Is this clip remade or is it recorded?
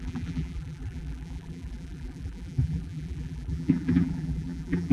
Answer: remade